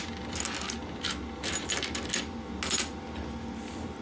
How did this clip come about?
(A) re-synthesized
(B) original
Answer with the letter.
B